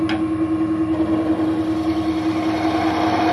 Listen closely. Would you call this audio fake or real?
real